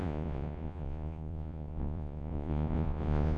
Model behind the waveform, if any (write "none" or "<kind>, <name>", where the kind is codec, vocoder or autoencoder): vocoder, Vocos